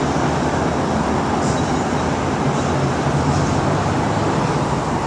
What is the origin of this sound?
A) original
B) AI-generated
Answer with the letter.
A